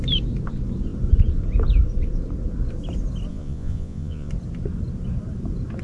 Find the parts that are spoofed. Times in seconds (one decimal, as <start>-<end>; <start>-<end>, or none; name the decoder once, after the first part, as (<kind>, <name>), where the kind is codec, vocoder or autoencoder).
3.3-4.3 (vocoder, Vocos)